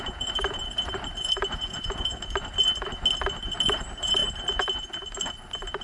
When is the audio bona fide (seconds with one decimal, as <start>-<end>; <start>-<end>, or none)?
2.1-3.4; 4.2-5.8